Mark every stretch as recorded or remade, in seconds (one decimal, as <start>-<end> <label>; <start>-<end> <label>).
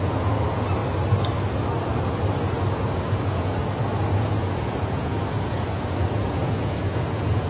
0.0-0.8 remade; 0.8-2.8 recorded; 2.8-7.5 remade